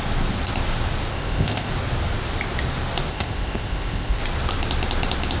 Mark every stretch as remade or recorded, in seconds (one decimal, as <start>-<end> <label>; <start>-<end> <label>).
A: 0.0-1.1 recorded; 1.1-1.7 remade; 1.7-3.1 recorded; 3.1-4.2 remade; 4.2-5.4 recorded